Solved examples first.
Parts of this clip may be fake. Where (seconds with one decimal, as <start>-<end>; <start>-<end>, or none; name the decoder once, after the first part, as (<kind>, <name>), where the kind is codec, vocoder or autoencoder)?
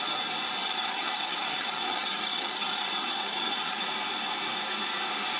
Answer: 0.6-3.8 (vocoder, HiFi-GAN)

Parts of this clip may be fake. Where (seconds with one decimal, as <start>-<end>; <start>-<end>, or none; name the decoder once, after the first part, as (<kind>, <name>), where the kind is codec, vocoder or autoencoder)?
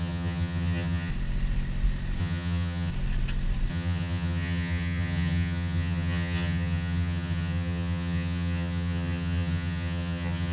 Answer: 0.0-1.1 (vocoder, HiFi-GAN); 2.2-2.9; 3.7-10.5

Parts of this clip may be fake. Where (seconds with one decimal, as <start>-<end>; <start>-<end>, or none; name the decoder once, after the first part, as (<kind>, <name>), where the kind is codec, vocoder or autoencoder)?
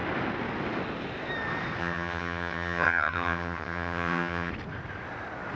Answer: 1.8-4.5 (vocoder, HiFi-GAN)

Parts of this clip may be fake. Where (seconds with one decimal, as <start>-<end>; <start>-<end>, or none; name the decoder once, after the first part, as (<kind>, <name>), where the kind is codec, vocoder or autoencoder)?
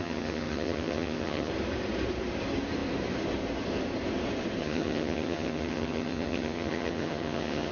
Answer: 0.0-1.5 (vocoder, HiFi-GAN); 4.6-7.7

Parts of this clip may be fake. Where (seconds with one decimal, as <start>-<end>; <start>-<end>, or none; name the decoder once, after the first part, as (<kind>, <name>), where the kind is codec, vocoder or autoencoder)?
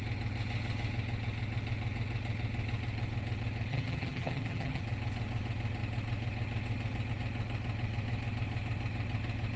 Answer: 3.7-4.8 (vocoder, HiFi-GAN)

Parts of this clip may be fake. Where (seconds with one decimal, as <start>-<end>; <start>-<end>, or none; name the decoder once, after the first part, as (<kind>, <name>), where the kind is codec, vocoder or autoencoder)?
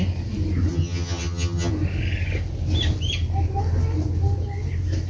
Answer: 0.7-1.7 (vocoder, HiFi-GAN)